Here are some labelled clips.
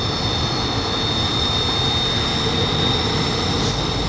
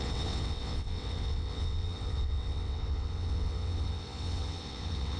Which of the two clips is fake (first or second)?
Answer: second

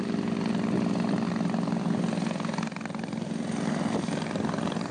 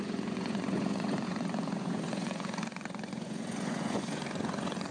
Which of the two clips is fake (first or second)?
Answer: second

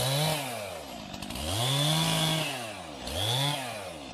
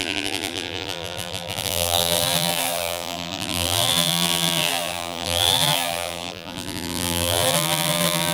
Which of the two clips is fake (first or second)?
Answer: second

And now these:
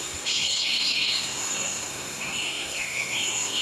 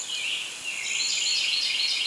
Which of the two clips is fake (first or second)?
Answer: first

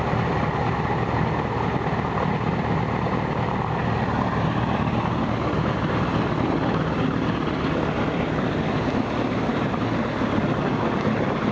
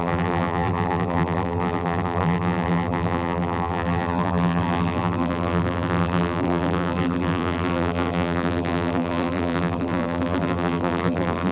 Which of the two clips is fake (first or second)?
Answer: second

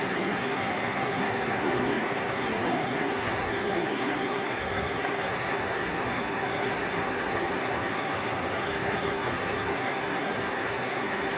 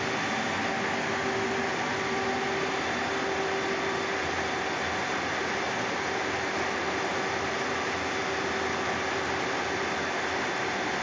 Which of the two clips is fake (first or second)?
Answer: first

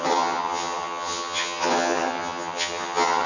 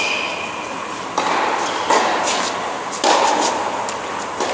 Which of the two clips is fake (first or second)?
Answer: first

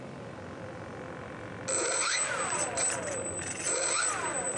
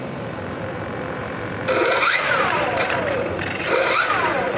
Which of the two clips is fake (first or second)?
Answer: second